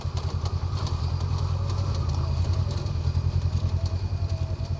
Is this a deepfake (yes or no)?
no